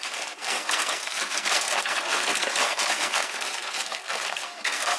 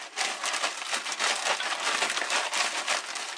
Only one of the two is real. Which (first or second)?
second